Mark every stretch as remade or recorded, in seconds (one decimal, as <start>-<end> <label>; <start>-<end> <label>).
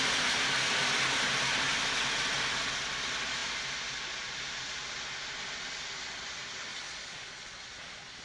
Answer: 0.0-6.7 recorded; 6.7-8.2 remade